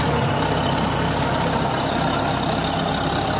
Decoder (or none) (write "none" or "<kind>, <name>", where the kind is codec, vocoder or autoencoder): vocoder, BigVGAN v2